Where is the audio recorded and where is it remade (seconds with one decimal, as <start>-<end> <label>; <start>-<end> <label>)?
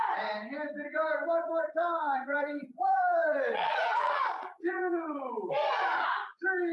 0.0-1.3 recorded; 1.3-5.3 remade; 5.3-6.7 recorded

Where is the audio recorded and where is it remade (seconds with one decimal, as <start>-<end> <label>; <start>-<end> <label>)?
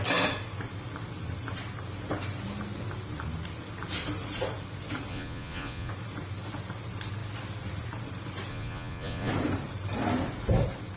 0.0-5.1 recorded; 5.1-5.9 remade; 5.9-8.5 recorded; 8.5-9.3 remade; 9.3-11.0 recorded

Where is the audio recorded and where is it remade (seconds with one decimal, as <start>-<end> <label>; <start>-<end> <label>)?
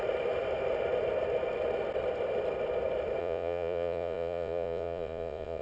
0.0-3.2 recorded; 3.2-5.6 remade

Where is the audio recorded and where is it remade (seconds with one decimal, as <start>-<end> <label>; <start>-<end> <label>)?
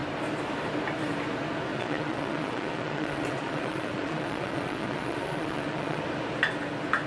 0.0-1.7 recorded; 1.7-6.0 remade; 6.0-7.1 recorded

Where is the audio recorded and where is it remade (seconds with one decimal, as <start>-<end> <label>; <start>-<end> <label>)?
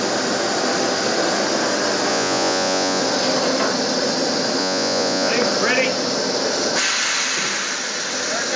0.0-2.1 recorded; 2.1-3.0 remade; 3.0-4.6 recorded; 4.6-5.3 remade; 5.3-8.6 recorded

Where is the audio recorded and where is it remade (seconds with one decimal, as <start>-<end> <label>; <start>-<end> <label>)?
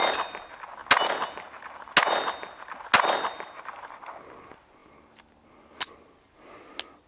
0.0-7.1 recorded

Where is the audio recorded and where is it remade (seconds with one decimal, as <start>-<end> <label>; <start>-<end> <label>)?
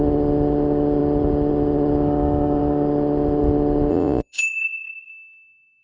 0.0-3.9 recorded; 3.9-5.1 remade; 5.1-5.8 recorded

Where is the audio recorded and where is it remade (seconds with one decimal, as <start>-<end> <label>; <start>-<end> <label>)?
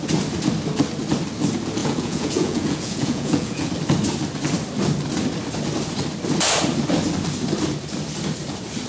0.0-1.8 recorded; 1.8-3.7 remade; 3.7-8.9 recorded